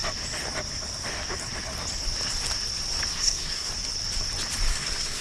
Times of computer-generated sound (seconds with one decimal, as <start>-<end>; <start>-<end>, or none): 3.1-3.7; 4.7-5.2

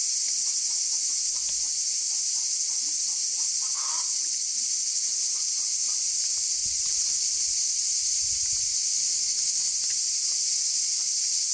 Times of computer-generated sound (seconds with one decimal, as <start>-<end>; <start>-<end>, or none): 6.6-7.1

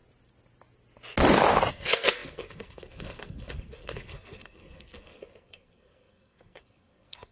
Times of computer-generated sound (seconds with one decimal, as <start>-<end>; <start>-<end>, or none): 1.7-7.3